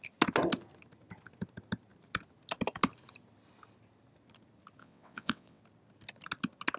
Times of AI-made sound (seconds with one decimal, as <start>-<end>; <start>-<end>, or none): 4.8-5.6